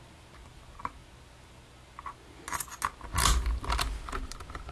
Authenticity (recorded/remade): recorded